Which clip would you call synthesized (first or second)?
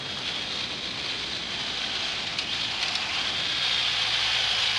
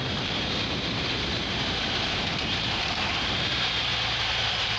second